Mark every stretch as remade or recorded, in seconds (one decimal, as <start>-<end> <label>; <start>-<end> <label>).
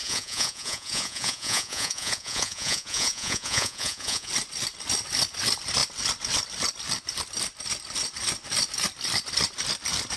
0.0-4.3 remade; 4.3-10.2 recorded